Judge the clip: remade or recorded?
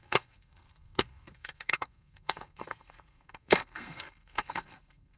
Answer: remade